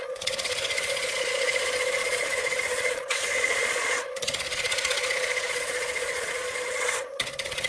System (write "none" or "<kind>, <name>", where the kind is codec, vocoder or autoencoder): vocoder, Vocos